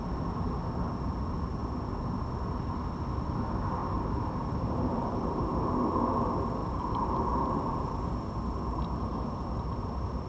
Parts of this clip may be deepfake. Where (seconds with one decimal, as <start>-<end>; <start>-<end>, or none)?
3.8-5.5; 6.6-8.3